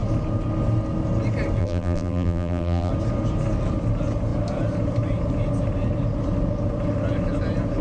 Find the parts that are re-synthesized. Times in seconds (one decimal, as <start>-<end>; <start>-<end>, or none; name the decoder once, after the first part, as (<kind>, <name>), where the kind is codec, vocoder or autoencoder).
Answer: 1.6-2.9 (vocoder, BigVGAN v2)